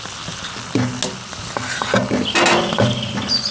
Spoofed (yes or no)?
no